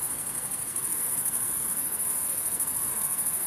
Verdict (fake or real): fake